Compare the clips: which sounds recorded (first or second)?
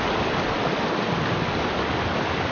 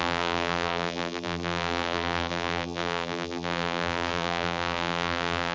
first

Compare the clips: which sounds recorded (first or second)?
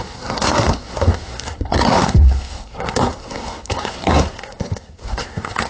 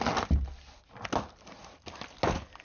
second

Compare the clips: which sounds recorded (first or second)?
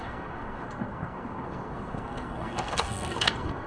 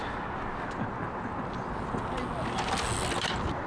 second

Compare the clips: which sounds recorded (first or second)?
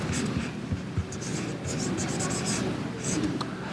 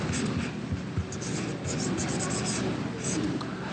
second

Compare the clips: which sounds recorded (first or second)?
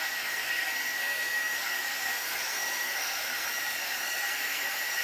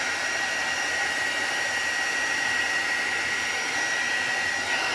second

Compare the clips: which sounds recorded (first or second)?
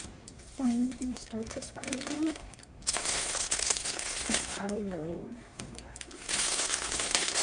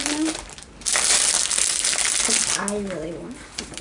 second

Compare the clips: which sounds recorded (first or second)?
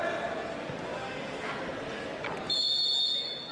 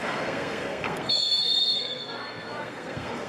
first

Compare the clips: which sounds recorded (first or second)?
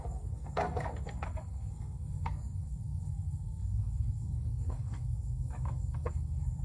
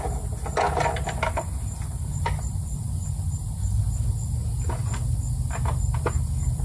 second